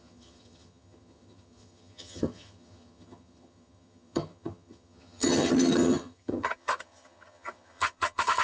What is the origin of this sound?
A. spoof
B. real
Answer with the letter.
A